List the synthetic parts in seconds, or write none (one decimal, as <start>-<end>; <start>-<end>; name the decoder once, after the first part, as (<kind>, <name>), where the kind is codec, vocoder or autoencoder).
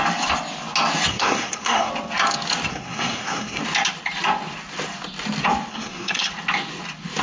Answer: 1.1-1.9 (codec, SNAC); 2.7-3.6; 5.7-6.3